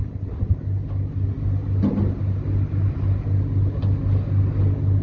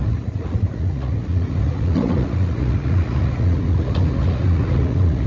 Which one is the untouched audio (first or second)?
first